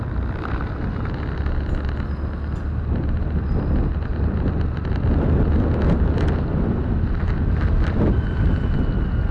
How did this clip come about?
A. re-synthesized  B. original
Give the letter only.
B